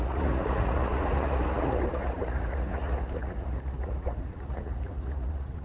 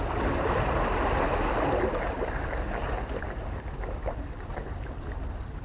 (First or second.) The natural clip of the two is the second